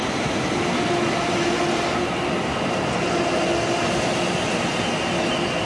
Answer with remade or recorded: recorded